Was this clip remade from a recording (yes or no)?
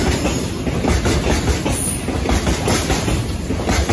no